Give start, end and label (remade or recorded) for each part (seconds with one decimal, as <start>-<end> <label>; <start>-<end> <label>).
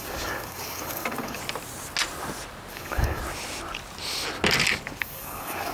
0.0-1.4 remade; 1.4-2.7 recorded; 2.7-3.2 remade; 3.2-5.0 recorded; 5.0-5.7 remade